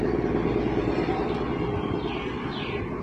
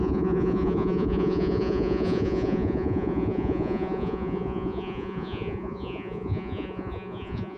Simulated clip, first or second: second